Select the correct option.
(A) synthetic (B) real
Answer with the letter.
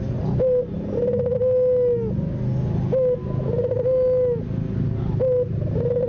B